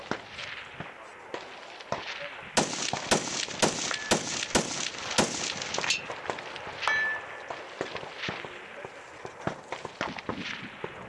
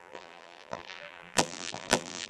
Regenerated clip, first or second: second